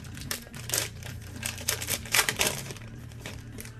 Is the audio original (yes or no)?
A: no